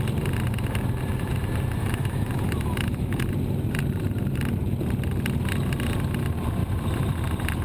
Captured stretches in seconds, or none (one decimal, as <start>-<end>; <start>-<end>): 0.0-1.8; 3.2-7.6